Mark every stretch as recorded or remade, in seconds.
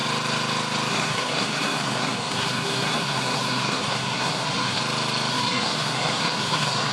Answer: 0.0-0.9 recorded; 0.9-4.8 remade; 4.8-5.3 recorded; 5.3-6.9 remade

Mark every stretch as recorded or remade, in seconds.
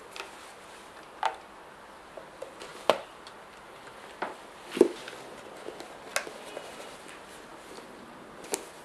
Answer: 0.0-8.8 recorded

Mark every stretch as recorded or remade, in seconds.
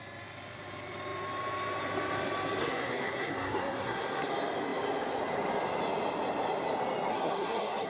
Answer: 0.0-2.6 recorded; 2.6-4.3 remade; 4.3-7.1 recorded; 7.1-7.9 remade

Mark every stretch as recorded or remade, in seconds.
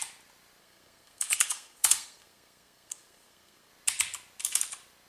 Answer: 0.0-0.6 recorded; 0.6-3.7 remade; 3.7-5.1 recorded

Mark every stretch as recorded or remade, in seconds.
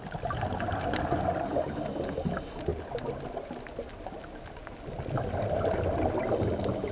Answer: 0.0-6.9 recorded